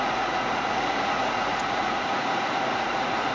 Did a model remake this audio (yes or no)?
yes